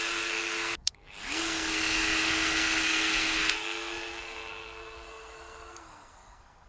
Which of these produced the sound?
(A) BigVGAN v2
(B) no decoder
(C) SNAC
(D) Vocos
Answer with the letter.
C